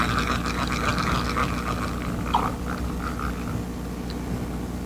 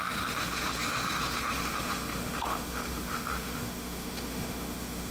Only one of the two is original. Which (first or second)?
first